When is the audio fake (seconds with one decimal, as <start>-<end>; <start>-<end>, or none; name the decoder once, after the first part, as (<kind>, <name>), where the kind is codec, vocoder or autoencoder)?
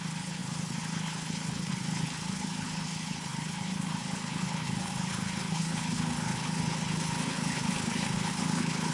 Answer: 0.0-8.9 (codec, HILCodec)